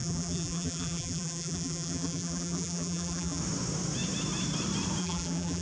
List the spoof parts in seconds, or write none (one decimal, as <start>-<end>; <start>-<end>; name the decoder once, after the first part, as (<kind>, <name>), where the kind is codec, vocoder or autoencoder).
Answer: 0.0-3.4 (vocoder, BigVGAN v2); 5.0-5.6